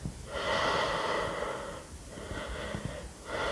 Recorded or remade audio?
recorded